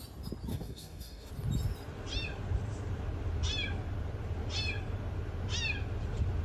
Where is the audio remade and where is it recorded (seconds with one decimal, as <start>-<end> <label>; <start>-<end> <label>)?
0.0-0.5 recorded; 0.5-1.3 remade; 1.3-6.4 recorded